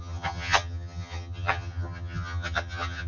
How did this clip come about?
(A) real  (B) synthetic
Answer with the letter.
B